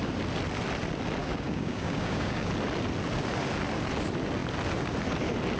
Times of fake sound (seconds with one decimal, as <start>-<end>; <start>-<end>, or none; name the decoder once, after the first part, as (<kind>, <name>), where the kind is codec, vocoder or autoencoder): 1.2-2.5 (codec, DAC)